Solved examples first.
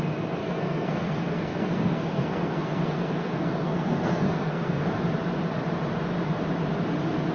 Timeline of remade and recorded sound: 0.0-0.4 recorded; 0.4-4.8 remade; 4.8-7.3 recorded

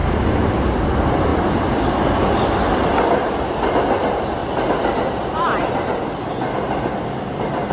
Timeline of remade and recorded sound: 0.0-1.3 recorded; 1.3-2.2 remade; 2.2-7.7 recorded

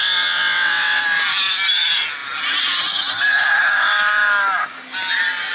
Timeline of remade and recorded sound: 0.0-1.0 remade; 1.0-5.5 recorded